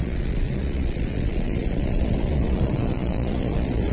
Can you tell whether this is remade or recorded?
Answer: remade